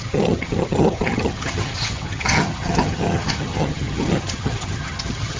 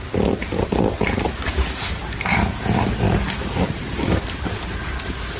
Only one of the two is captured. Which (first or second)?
second